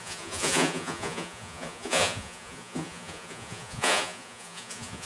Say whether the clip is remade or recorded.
remade